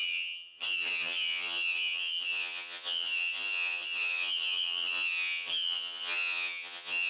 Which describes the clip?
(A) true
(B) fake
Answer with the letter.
B